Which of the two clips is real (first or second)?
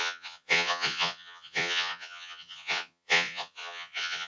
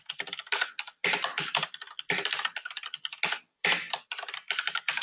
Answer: second